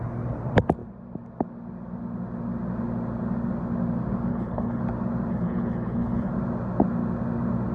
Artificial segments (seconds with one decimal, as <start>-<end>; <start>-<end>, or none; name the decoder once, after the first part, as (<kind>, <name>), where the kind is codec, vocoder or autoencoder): 4.3-4.8 (codec, HILCodec); 5.3-6.3